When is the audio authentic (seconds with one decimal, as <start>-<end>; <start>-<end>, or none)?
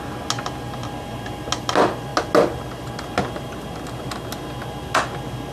0.0-5.5